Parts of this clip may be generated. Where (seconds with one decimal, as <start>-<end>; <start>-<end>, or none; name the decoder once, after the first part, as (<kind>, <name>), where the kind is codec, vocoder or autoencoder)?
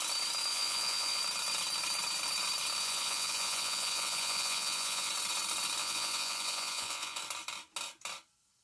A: 0.5-1.2 (vocoder, Vocos); 2.8-5.1; 5.8-7.2